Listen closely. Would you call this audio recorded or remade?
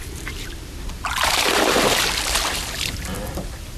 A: remade